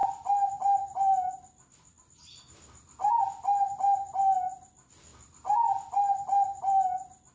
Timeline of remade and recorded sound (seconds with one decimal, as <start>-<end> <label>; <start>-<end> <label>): 0.0-7.3 recorded